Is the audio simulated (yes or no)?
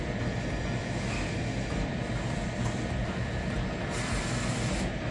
yes